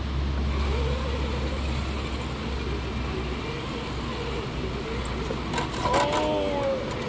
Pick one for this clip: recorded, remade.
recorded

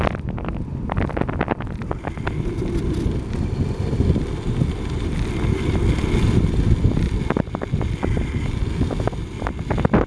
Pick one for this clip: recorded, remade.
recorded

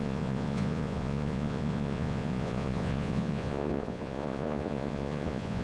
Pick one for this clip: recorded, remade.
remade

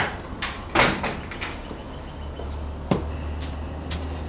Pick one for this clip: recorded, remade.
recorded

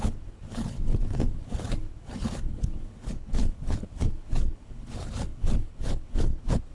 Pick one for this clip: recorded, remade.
remade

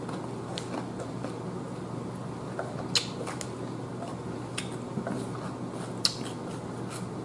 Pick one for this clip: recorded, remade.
recorded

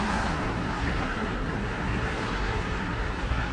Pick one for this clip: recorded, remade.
remade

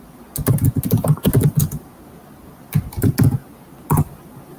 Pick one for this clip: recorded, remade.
recorded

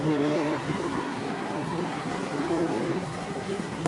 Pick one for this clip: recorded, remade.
remade